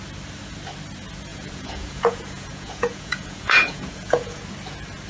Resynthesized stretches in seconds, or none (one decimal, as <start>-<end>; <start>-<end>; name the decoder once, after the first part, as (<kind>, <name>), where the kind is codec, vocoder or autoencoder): 1.3-4.4 (vocoder, Vocos)